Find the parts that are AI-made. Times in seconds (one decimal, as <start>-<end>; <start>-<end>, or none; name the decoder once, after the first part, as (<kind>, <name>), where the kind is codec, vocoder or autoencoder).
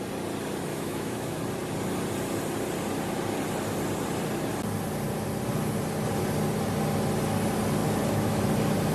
0.7-1.4 (autoencoder, DAC-VAE); 7.8-8.4